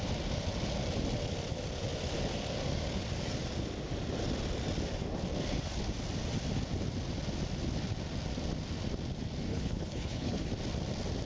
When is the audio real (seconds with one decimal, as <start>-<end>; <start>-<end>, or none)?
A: 0.0-9.5; 10.5-11.3